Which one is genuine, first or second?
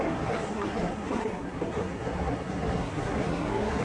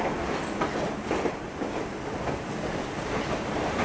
second